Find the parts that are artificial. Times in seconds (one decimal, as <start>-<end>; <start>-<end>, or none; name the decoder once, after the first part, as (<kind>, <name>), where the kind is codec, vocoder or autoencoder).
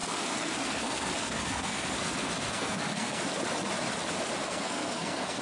0.0-3.2 (codec, SNAC); 4.4-5.4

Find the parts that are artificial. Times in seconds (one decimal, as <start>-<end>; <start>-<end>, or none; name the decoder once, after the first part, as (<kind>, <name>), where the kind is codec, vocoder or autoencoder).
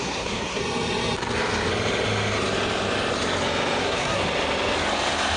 0.0-0.6 (codec, SNAC); 3.8-4.2